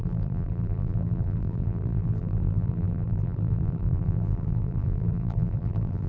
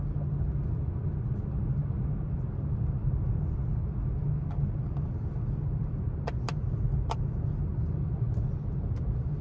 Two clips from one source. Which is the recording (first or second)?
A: second